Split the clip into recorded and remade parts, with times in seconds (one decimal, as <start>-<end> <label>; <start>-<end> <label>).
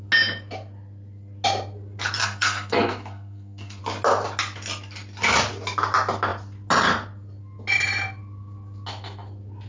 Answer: 0.0-2.2 recorded; 2.2-3.8 remade; 3.8-9.7 recorded